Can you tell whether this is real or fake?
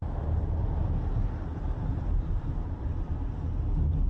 real